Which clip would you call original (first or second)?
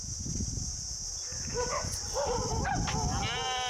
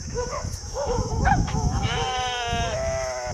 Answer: first